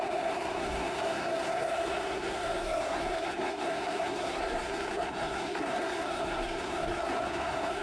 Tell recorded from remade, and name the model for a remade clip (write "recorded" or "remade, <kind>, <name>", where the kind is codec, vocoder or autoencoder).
remade, codec, SNAC